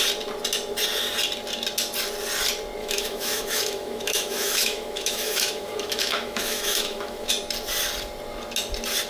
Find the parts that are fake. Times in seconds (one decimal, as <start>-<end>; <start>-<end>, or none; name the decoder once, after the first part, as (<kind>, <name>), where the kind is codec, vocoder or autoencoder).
2.8-7.3 (autoencoder, DAC-VAE)